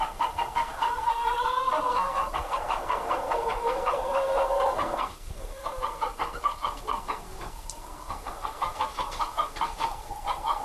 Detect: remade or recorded remade